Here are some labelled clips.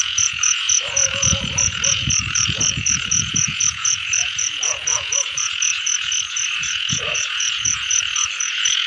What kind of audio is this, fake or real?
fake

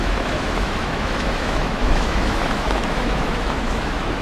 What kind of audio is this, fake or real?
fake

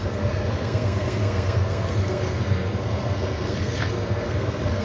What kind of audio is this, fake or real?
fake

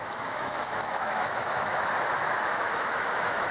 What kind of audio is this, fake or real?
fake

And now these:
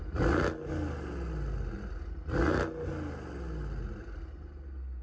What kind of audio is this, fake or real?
real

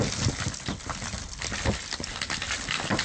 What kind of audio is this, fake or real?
real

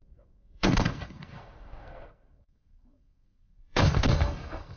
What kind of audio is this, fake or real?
fake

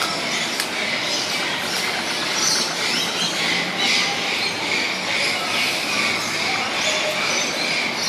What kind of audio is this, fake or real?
real